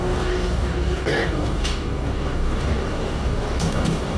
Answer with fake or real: fake